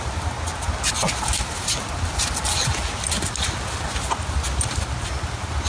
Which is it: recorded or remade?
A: recorded